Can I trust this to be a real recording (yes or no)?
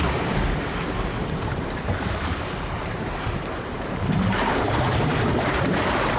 no